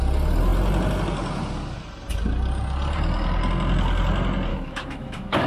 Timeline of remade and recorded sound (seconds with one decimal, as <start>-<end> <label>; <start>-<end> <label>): 0.0-4.5 recorded; 4.5-5.5 remade